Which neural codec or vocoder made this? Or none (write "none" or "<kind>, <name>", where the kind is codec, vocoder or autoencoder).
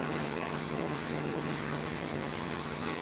vocoder, HiFi-GAN